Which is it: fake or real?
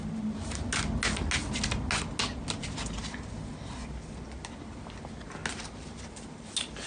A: real